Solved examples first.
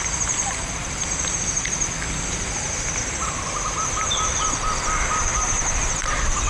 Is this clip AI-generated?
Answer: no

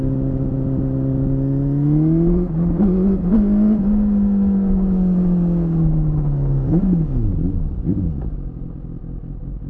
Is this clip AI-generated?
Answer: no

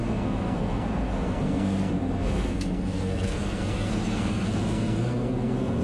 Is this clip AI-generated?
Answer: yes